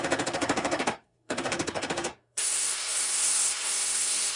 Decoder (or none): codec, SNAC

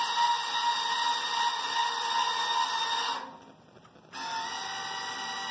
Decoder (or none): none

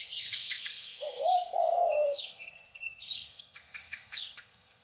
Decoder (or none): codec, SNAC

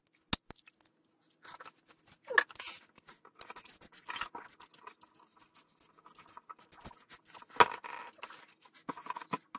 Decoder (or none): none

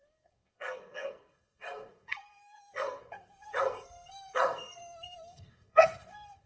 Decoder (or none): codec, SNAC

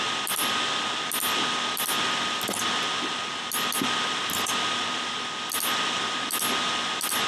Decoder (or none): none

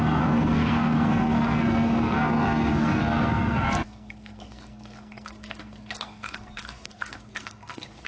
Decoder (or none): codec, SNAC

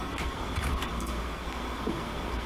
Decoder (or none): codec, SNAC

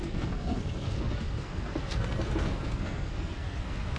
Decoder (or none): codec, SNAC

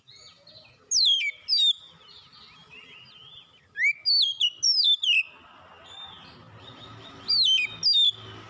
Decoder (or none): none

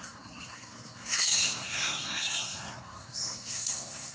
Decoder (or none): codec, SNAC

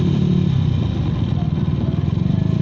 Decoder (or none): none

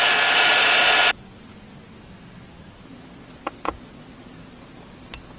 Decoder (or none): none